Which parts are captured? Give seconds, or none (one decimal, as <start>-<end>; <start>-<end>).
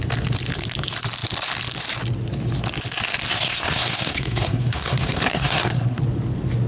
0.0-3.3; 6.0-6.7